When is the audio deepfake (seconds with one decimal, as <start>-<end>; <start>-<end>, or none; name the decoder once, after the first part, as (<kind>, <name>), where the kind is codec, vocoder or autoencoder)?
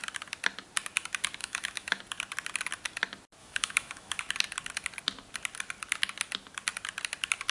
1.4-2.0 (autoencoder, DAC-VAE); 3.4-4.2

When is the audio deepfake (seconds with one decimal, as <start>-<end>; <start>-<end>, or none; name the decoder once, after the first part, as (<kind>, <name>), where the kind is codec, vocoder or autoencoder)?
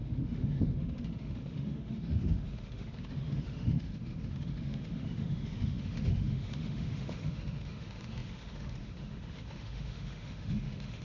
0.0-11.0 (autoencoder, DAC-VAE)